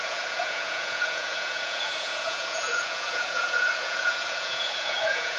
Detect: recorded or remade remade